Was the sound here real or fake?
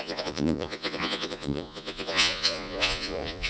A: fake